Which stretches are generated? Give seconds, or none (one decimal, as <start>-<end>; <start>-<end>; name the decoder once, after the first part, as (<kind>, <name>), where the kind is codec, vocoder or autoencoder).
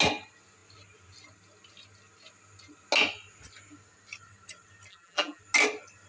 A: 4.9-5.4 (vocoder, BigVGAN v2)